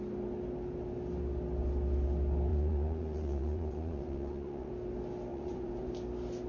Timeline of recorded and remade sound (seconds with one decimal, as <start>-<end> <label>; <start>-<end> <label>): 0.0-2.5 recorded; 2.5-4.7 remade; 4.7-5.3 recorded; 5.3-5.9 remade; 5.9-6.5 recorded